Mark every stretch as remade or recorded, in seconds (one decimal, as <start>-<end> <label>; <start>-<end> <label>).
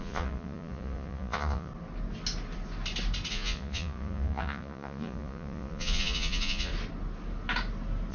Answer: 0.0-1.7 remade; 1.7-3.3 recorded; 3.3-6.7 remade; 6.7-8.1 recorded